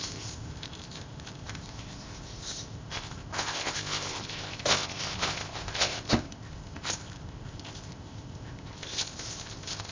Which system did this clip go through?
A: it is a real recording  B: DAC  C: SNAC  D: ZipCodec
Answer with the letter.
D